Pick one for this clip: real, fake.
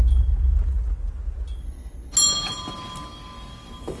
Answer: real